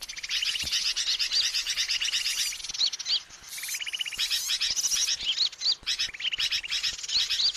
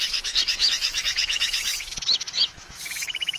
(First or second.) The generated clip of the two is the second